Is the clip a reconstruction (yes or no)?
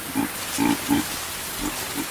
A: no